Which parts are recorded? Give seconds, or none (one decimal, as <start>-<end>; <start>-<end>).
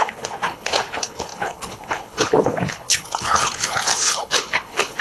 none